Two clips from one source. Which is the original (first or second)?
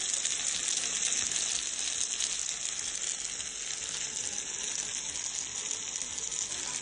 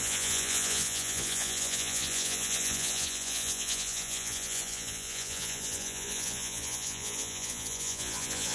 first